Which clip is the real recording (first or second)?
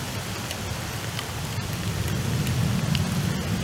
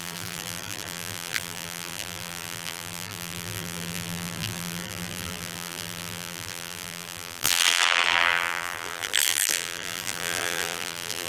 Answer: first